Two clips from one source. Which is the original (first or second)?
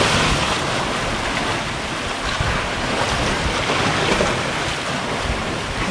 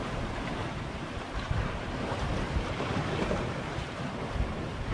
first